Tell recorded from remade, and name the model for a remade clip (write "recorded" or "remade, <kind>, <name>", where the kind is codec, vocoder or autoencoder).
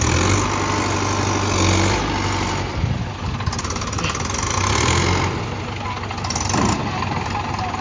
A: recorded